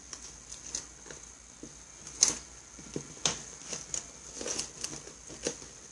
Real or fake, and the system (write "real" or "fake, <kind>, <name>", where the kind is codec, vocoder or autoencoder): real